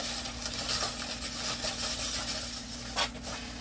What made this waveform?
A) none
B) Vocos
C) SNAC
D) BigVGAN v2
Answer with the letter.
A